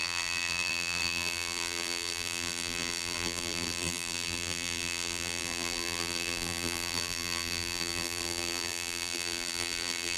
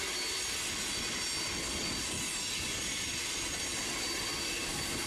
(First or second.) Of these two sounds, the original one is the second